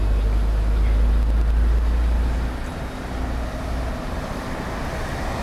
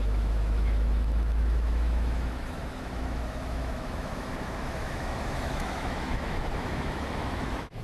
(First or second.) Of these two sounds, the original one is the first